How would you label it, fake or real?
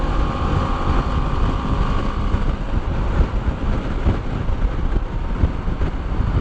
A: real